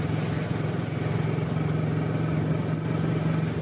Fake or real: real